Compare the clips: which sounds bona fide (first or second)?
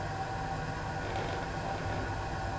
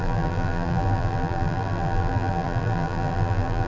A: first